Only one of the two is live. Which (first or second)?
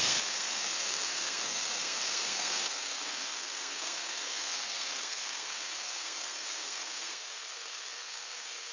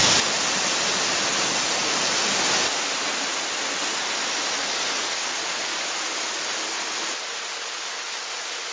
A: second